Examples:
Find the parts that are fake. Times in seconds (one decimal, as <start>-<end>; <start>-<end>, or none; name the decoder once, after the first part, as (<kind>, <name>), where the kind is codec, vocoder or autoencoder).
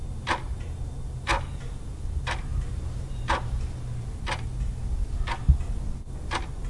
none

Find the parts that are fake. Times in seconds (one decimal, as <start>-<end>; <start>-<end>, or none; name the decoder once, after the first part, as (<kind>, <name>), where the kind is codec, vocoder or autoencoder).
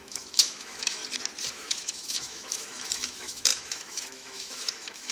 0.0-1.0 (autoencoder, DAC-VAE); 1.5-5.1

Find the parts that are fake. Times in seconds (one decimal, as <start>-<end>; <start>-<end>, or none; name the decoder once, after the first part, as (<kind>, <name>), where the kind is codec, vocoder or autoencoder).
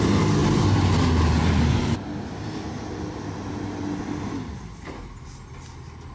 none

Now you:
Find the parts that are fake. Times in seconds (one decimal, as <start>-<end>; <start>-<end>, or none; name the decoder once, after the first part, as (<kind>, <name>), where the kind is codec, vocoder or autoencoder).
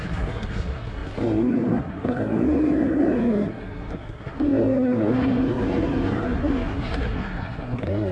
0.0-8.1 (codec, SNAC)